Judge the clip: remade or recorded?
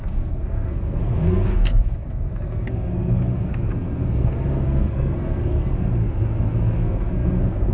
remade